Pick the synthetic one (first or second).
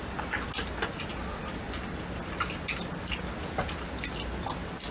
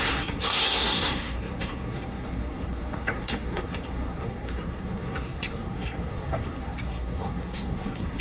second